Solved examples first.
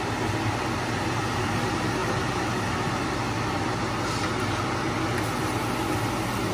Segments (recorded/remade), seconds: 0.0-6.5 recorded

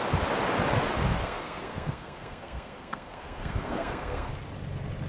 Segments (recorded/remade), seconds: 0.0-1.2 recorded; 1.2-4.3 remade; 4.3-5.1 recorded

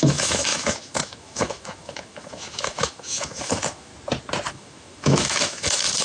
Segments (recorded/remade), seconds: 0.0-3.9 remade; 3.9-4.5 recorded; 4.5-6.0 remade

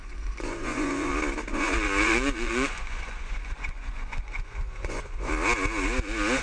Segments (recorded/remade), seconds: 0.0-1.1 remade; 1.1-1.5 recorded; 1.5-5.3 remade; 5.3-6.4 recorded

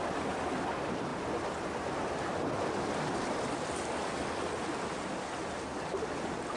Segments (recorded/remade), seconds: 0.0-6.6 recorded

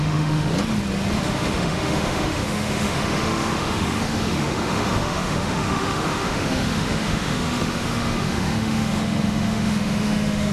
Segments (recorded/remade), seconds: 0.0-0.5 remade; 0.5-1.2 recorded; 1.2-10.5 remade

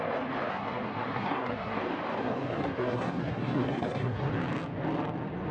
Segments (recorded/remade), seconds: 0.0-0.5 recorded; 0.5-1.8 remade; 1.8-2.2 recorded; 2.2-4.3 remade; 4.3-5.5 recorded

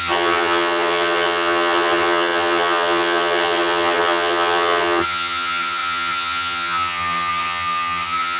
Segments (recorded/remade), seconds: 0.0-8.4 remade